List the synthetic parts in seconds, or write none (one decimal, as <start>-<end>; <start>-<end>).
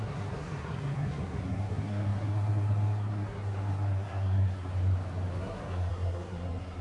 0.0-4.7; 5.4-6.8